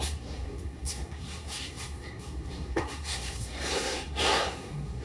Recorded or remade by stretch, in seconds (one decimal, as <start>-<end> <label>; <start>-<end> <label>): 0.0-5.0 remade